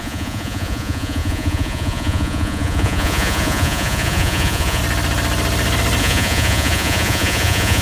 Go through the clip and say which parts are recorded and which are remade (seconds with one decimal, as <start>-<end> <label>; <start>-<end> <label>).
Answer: 0.0-4.8 remade; 4.8-6.0 recorded; 6.0-7.8 remade

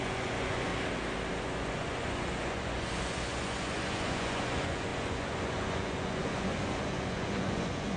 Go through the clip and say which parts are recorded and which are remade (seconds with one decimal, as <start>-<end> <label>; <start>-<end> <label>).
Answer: 0.0-0.7 remade; 0.7-1.3 recorded; 1.3-8.0 remade

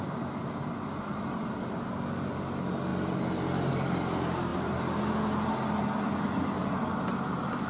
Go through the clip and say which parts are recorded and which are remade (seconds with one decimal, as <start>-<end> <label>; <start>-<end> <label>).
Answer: 0.0-7.7 recorded

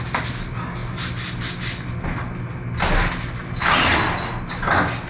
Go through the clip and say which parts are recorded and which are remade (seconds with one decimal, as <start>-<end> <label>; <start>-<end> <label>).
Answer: 0.0-5.1 recorded

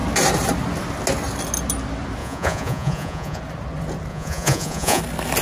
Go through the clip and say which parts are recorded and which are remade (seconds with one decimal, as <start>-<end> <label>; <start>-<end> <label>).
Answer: 0.0-2.2 recorded; 2.2-3.4 remade; 3.4-4.1 recorded; 4.1-5.0 remade; 5.0-5.4 recorded

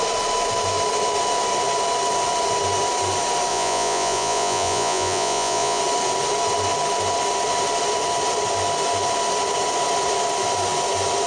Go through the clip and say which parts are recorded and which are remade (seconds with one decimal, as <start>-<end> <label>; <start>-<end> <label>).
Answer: 0.0-3.5 recorded; 3.5-5.8 remade; 5.8-11.3 recorded

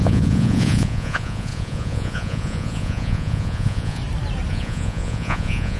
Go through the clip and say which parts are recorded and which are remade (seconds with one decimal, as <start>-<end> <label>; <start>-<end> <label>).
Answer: 0.0-4.0 remade; 4.0-4.5 recorded; 4.5-5.8 remade

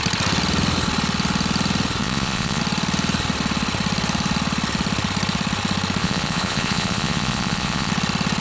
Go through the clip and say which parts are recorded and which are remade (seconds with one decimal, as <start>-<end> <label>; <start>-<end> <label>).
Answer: 0.0-2.0 recorded; 2.0-2.6 remade; 2.6-6.0 recorded; 6.0-7.9 remade; 7.9-8.4 recorded